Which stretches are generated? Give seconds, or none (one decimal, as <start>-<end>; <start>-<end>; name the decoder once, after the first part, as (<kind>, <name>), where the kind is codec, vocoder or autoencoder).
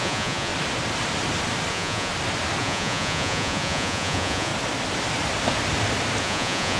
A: 0.0-0.5 (vocoder, Vocos); 1.7-2.1; 2.6-4.5; 6.2-6.8